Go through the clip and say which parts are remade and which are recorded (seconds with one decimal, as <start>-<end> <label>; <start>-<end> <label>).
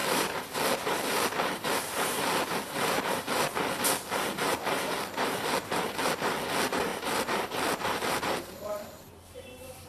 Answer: 0.0-3.2 remade; 3.2-4.5 recorded; 4.5-5.9 remade; 5.9-6.9 recorded; 6.9-9.9 remade